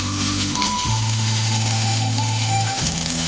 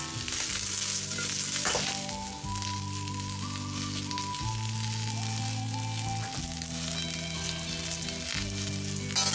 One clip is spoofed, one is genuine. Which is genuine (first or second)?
second